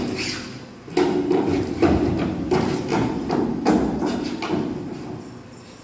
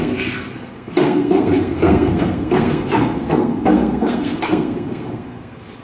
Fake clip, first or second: second